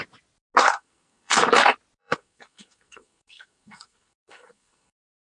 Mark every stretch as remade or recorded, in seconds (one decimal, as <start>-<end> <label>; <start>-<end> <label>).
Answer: 0.0-0.6 recorded; 0.6-1.4 remade; 1.4-2.0 recorded; 2.0-5.4 remade